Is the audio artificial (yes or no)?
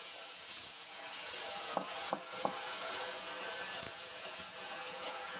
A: yes